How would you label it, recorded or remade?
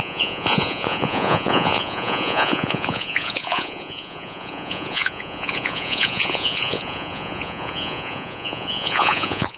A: remade